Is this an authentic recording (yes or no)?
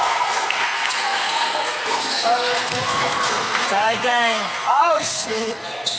no